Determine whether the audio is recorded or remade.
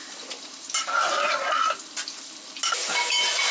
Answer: recorded